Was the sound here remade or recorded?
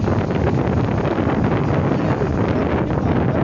recorded